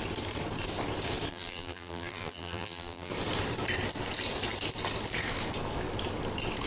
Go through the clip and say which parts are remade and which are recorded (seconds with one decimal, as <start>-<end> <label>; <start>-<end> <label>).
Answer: 0.0-1.3 recorded; 1.3-3.1 remade; 3.1-6.7 recorded